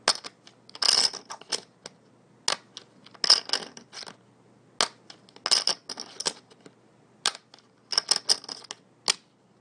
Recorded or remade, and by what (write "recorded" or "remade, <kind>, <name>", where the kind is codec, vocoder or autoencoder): recorded